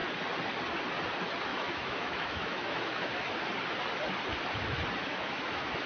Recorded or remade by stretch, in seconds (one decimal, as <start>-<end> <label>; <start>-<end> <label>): 0.0-1.5 recorded; 1.5-3.4 remade; 3.4-5.0 recorded; 5.0-5.9 remade